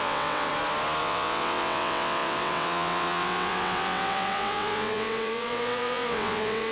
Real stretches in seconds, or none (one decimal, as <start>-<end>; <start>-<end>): 0.5-1.0